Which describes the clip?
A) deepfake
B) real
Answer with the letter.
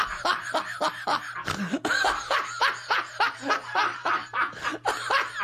B